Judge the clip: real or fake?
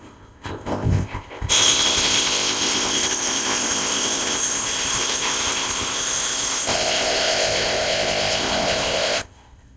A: fake